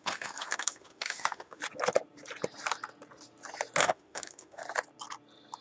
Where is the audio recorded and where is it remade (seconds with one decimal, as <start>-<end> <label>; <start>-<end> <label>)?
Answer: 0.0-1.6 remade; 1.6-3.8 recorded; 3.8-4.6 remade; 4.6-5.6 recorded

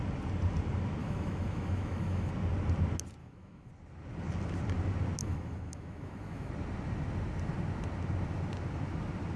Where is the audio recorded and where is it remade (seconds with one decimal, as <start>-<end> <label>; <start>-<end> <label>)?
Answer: 0.0-1.0 recorded; 1.0-2.3 remade; 2.3-3.2 recorded; 3.2-3.7 remade; 3.7-5.2 recorded; 5.2-6.5 remade; 6.5-9.4 recorded

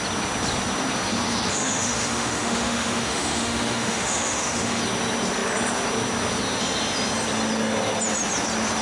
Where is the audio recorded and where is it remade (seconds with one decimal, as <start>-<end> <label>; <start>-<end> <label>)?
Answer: 0.0-1.5 recorded; 1.5-4.8 remade; 4.8-8.8 recorded